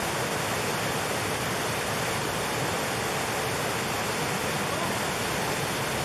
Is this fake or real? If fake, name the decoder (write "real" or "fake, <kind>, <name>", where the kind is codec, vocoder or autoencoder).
real